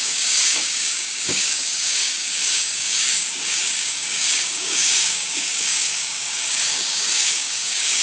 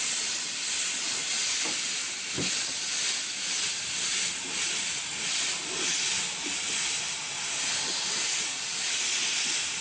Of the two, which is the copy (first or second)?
first